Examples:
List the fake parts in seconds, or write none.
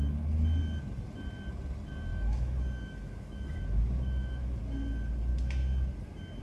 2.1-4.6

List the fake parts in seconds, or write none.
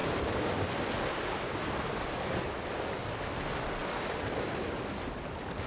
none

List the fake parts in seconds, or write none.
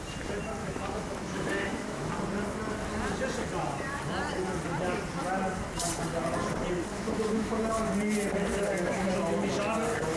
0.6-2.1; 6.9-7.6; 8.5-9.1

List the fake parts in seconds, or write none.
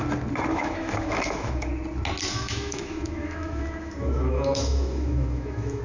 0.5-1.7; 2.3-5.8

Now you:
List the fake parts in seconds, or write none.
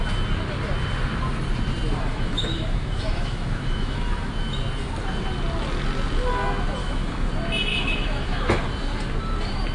2.1-4.3; 6.8-7.3; 7.7-8.6